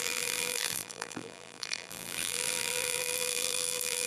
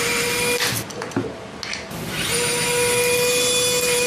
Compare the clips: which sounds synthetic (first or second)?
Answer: first